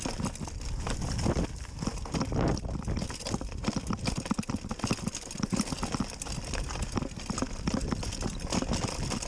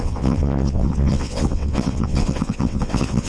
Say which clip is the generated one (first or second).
second